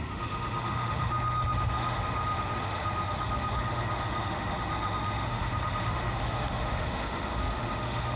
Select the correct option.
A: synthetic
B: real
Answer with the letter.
A